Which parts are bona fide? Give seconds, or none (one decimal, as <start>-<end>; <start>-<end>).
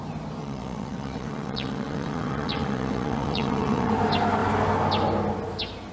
0.0-0.4; 3.9-5.9